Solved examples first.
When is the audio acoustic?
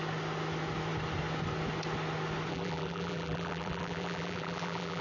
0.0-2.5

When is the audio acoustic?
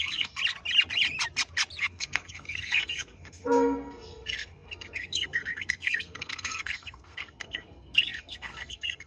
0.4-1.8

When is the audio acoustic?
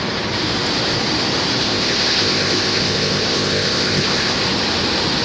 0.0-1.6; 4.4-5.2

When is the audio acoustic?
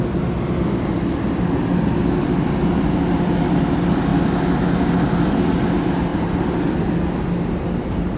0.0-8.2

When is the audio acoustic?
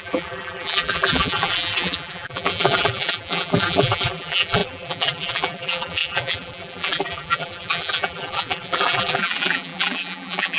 none